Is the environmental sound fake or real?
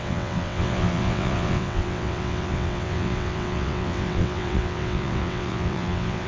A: fake